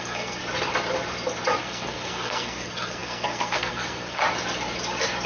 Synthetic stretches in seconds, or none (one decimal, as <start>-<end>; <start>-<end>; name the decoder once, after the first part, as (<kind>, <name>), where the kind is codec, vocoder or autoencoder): 0.0-0.4 (codec, SNAC); 1.6-4.2